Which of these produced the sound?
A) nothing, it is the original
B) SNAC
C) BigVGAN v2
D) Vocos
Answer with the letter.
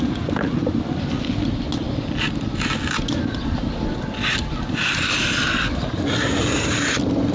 A